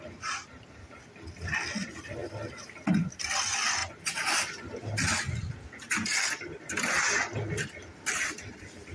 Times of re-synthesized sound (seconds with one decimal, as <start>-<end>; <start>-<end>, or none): 0.0-2.2; 3.2-3.8; 7.5-8.9